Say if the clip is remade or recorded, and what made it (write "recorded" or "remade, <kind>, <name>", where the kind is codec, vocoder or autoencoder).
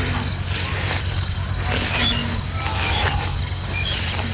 recorded